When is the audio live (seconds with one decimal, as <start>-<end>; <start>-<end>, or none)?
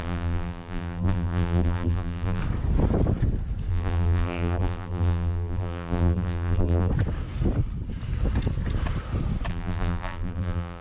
2.4-3.7; 6.9-9.5